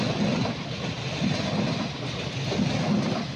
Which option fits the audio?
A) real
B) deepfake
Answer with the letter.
A